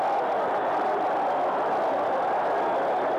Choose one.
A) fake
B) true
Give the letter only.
B